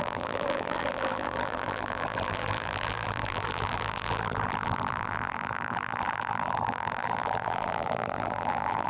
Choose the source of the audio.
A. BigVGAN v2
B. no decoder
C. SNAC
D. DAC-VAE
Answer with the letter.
A